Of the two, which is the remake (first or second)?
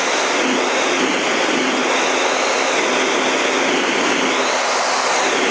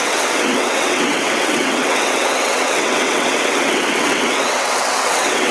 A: second